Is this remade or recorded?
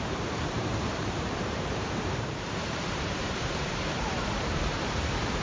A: remade